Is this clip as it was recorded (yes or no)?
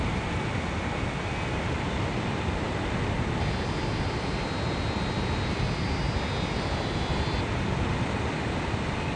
yes